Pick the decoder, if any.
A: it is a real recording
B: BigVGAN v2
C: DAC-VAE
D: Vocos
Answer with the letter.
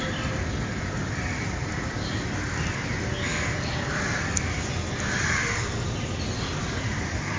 A